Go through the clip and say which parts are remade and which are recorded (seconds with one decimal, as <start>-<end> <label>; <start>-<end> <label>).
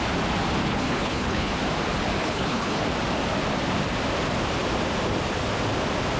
0.0-0.7 recorded; 0.7-1.5 remade; 1.5-2.2 recorded; 2.2-2.8 remade; 2.8-6.2 recorded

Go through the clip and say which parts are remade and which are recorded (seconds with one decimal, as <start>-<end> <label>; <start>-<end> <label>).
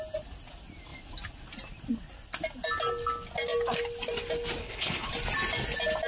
0.0-4.6 recorded; 4.6-5.1 remade; 5.1-6.1 recorded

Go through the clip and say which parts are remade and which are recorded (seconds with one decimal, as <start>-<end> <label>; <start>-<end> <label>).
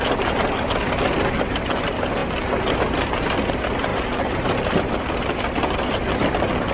0.0-6.7 recorded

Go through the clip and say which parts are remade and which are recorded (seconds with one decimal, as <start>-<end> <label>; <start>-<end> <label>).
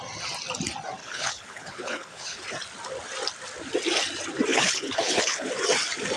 0.0-1.0 recorded; 1.0-2.4 remade; 2.4-4.5 recorded; 4.5-5.5 remade; 5.5-6.2 recorded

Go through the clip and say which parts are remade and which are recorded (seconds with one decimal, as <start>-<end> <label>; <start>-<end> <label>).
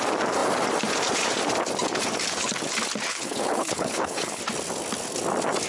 0.0-3.1 recorded; 3.1-4.4 remade; 4.4-5.7 recorded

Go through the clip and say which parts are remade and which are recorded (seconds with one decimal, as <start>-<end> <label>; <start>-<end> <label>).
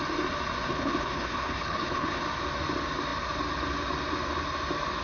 0.0-0.7 recorded; 0.7-2.2 remade; 2.2-5.0 recorded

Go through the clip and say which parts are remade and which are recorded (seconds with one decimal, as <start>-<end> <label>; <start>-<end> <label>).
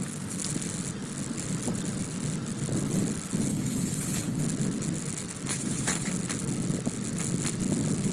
0.0-3.5 recorded; 3.5-4.4 remade; 4.4-5.5 recorded; 5.5-6.1 remade; 6.1-8.1 recorded